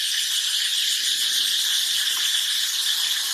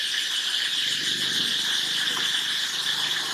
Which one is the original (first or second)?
second